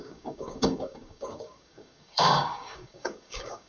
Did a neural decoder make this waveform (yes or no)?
yes